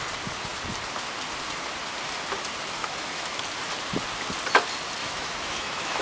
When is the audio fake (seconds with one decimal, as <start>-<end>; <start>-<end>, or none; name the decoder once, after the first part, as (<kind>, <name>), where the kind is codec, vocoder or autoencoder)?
2.8-3.4 (autoencoder, DAC-VAE); 5.0-6.0